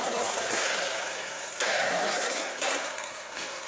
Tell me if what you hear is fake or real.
fake